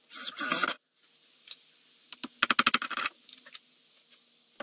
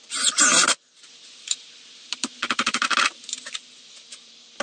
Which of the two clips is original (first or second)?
first